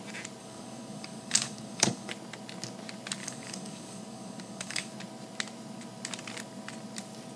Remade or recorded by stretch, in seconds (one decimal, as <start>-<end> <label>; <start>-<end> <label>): 0.0-0.4 recorded; 0.4-2.1 remade; 2.1-3.2 recorded; 3.2-4.9 remade; 4.9-7.4 recorded